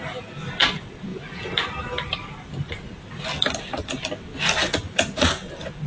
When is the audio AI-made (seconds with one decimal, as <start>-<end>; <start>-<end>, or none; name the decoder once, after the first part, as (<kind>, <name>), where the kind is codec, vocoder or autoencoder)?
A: 0.0-5.9 (vocoder, BigVGAN v2)